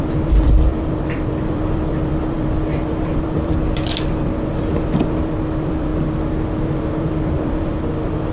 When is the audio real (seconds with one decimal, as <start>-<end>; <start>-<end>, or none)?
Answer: 5.9-6.6